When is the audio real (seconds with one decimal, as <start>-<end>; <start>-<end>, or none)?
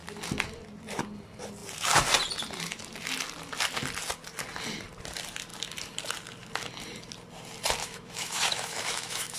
0.0-7.8